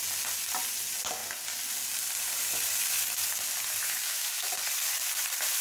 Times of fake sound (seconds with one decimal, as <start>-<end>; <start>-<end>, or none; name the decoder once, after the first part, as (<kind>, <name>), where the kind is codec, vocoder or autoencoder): 3.8-4.5 (autoencoder, DAC-VAE)